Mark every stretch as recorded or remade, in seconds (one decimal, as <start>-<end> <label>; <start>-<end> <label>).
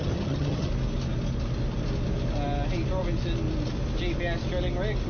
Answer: 0.0-0.7 remade; 0.7-5.1 recorded